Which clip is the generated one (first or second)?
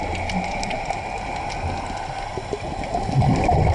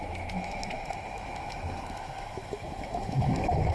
second